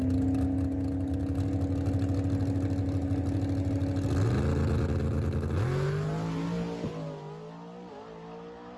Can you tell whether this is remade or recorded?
recorded